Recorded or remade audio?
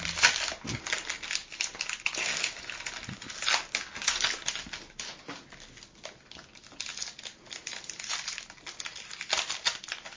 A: recorded